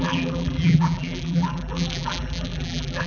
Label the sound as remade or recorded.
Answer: remade